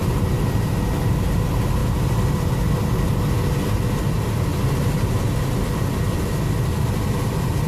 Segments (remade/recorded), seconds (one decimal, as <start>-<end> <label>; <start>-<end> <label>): 0.0-7.7 recorded